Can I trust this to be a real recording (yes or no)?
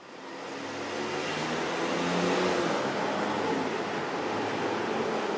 yes